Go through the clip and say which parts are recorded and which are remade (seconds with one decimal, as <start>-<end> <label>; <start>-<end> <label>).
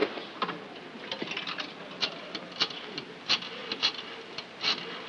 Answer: 0.0-5.1 recorded